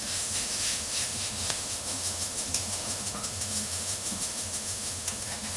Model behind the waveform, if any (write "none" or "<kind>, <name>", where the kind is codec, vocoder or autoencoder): autoencoder, DAC-VAE